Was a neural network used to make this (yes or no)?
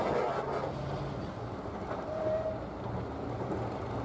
no